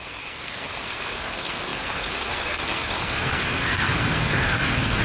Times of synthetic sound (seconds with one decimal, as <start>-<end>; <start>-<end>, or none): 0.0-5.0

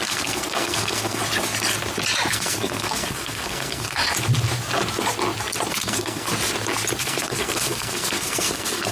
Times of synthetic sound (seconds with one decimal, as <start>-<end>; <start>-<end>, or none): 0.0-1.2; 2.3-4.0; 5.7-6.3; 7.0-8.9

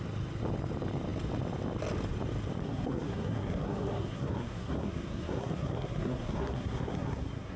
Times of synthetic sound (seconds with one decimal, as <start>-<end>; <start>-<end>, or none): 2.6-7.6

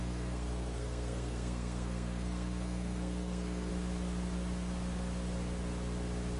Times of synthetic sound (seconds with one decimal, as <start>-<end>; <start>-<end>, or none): 0.0-3.7

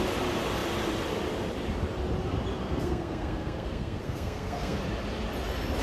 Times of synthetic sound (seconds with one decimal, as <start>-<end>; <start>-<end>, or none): 2.6-4.8